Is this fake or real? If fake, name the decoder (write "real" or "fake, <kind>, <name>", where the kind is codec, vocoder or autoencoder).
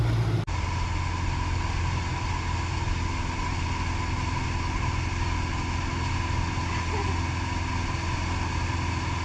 real